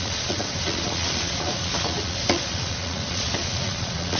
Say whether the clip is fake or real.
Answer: fake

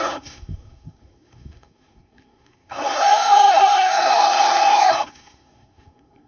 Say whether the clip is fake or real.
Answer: fake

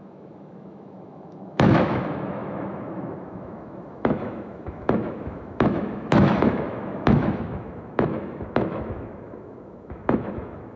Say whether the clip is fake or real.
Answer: fake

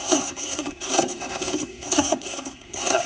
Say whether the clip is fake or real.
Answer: fake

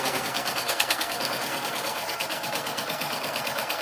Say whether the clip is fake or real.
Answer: fake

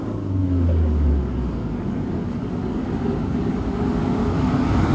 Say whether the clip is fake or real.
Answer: fake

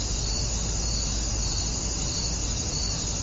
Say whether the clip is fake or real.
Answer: real